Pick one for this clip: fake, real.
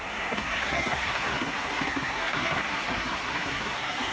fake